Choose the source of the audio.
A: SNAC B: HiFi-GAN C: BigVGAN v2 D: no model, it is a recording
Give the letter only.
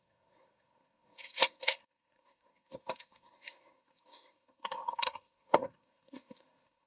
A